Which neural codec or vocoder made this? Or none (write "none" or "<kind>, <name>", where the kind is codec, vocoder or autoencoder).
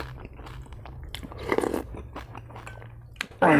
none